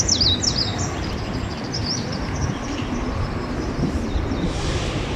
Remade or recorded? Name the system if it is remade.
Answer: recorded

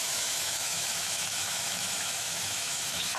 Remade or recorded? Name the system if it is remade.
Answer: remade, autoencoder, DAC-VAE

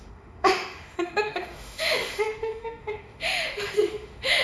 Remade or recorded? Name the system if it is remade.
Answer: remade, autoencoder, DAC-VAE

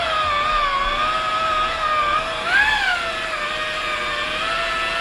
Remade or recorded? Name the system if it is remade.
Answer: recorded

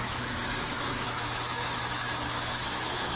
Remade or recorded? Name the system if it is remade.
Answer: remade, autoencoder, DAC-VAE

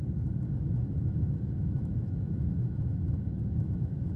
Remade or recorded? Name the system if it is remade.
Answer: remade, autoencoder, DAC-VAE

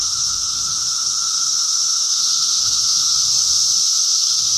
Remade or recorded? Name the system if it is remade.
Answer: remade, autoencoder, DAC-VAE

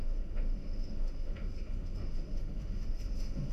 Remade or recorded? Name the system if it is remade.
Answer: remade, autoencoder, DAC-VAE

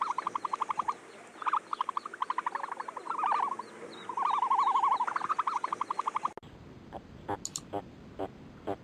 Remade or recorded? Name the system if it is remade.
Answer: recorded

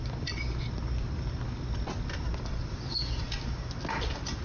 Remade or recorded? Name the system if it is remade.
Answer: recorded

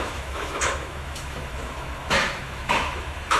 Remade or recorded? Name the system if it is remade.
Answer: remade, autoencoder, DAC-VAE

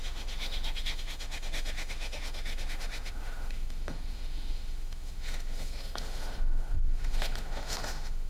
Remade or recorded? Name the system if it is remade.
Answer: remade, autoencoder, DAC-VAE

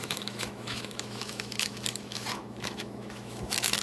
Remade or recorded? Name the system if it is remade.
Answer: remade, autoencoder, DAC-VAE